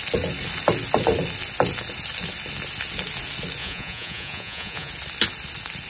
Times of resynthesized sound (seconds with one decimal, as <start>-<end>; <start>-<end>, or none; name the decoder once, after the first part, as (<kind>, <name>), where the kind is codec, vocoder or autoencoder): 3.6-4.9 (vocoder, Vocos)